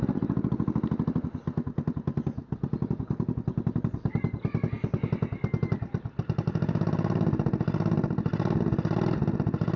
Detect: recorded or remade recorded